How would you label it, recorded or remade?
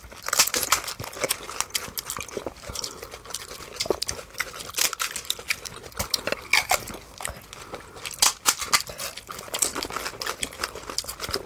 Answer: recorded